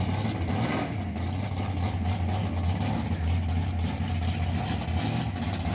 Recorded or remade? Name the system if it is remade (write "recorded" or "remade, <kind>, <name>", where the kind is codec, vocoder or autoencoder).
recorded